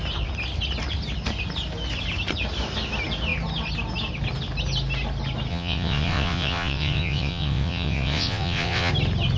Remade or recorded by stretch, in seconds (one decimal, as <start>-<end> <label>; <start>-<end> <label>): 0.0-5.5 recorded; 5.5-8.9 remade; 8.9-9.4 recorded